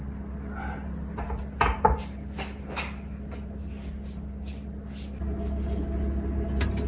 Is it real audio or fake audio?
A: real